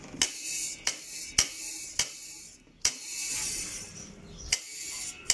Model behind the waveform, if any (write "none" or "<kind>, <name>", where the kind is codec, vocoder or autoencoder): none